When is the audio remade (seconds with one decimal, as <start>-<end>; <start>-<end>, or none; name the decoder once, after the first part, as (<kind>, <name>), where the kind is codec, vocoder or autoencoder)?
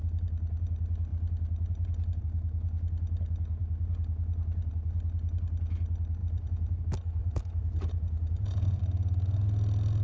6.2-6.8 (vocoder, Vocos); 7.2-8.8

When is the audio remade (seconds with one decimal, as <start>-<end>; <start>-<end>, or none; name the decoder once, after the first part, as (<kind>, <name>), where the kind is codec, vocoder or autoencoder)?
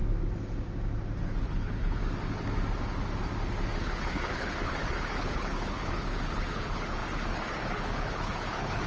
1.4-2.0 (codec, HILCodec); 3.8-8.9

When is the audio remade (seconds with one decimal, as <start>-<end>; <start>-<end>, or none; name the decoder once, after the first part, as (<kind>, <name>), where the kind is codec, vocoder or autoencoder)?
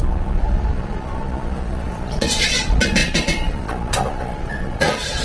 0.0-5.2 (vocoder, Vocos)